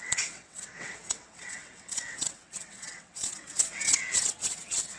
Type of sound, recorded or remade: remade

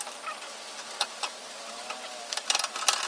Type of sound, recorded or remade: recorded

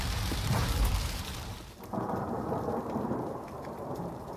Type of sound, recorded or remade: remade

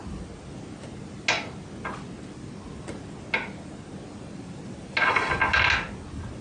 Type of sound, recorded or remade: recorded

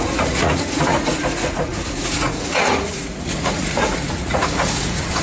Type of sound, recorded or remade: remade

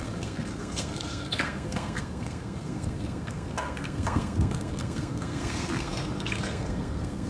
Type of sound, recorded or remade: remade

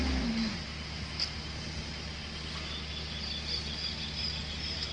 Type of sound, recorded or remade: recorded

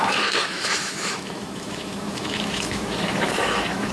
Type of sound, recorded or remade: remade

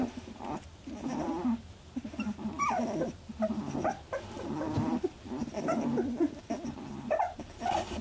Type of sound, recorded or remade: recorded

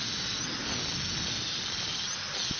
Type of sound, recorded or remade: recorded